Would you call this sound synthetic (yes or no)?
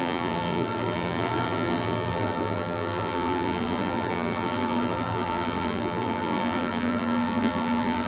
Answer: yes